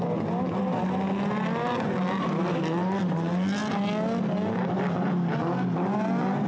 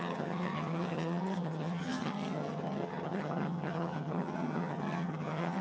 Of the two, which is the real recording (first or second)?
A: first